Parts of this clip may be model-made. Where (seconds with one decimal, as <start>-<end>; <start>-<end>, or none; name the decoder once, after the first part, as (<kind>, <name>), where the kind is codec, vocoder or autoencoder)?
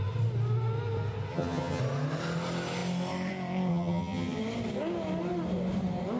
1.3-1.8 (vocoder, HiFi-GAN); 3.7-4.4